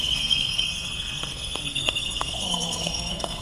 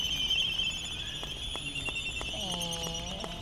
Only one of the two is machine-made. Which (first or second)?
first